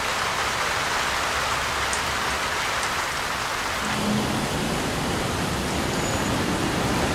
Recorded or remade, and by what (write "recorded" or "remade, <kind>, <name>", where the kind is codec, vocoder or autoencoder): recorded